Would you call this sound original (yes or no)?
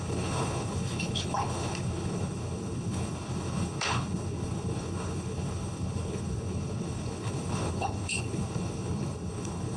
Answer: no